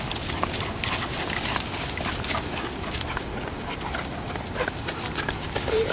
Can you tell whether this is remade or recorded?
recorded